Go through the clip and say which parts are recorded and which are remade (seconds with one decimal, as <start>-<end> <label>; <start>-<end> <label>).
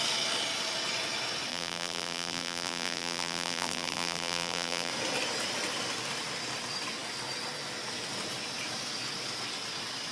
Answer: 0.0-1.5 recorded; 1.5-4.9 remade; 4.9-10.1 recorded